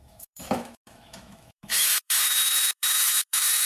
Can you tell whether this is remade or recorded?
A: remade